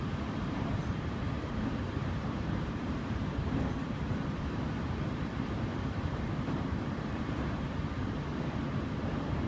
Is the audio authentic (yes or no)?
no